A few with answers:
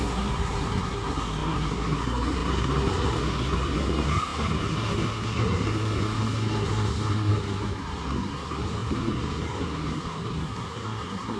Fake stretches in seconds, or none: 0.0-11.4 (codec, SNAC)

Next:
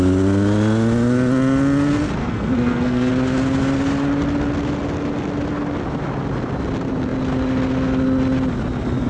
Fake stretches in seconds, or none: 2.2-3.1 (codec, SNAC)

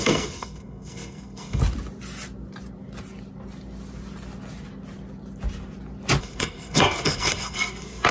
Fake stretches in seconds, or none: 0.0-1.6 (codec, SNAC); 6.2-8.1

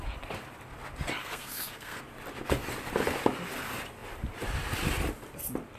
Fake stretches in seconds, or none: 1.2-2.0 (codec, SNAC)